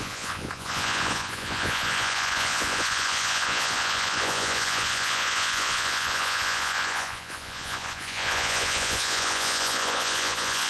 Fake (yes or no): yes